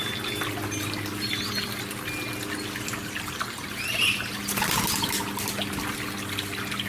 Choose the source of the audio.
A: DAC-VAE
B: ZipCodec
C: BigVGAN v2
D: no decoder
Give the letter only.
D